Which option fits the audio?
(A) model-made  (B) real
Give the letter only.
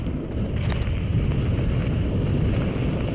B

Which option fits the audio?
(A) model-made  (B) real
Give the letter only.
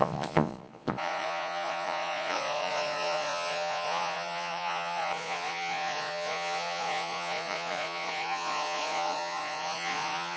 A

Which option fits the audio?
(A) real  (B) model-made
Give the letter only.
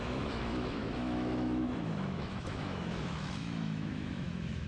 B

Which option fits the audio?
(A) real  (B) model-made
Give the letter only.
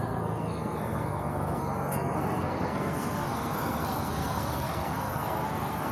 B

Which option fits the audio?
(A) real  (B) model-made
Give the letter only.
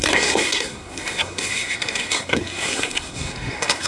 B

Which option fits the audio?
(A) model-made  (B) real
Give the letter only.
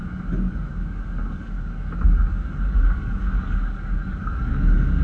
A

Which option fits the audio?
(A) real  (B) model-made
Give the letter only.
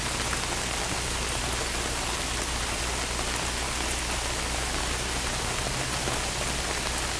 A